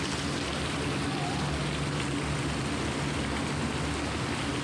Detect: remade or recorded recorded